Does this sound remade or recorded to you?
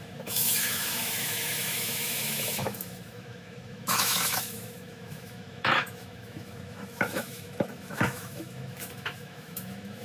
remade